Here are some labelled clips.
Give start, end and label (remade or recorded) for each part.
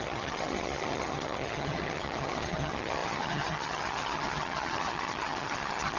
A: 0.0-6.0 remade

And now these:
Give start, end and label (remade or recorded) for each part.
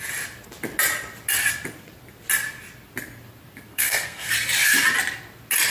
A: 0.0-3.7 recorded; 3.7-4.3 remade; 4.3-5.7 recorded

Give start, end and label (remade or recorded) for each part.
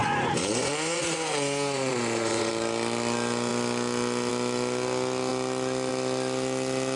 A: 0.0-2.5 remade; 2.5-7.0 recorded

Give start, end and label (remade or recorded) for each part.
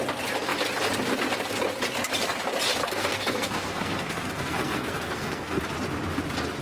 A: 0.0-2.8 recorded; 2.8-5.6 remade; 5.6-6.6 recorded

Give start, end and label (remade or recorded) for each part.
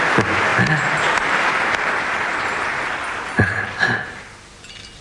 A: 0.0-5.0 recorded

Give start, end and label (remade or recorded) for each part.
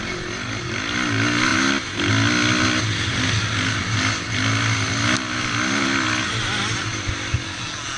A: 0.0-8.0 recorded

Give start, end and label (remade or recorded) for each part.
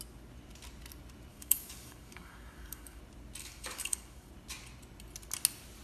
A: 0.0-1.3 recorded; 1.3-3.0 remade; 3.0-3.4 recorded; 3.4-4.3 remade; 4.3-5.8 recorded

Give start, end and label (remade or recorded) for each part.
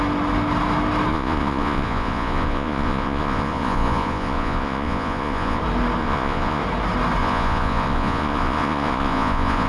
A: 0.0-1.1 recorded; 1.1-5.6 remade; 5.6-6.0 recorded; 6.0-6.6 remade; 6.6-7.2 recorded; 7.2-9.7 remade